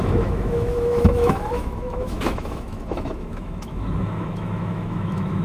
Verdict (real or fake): fake